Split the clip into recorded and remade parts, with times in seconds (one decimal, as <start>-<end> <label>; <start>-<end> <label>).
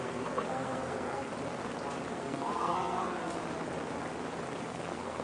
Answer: 0.0-1.3 remade; 1.3-2.1 recorded; 2.1-3.2 remade; 3.2-4.6 recorded; 4.6-5.2 remade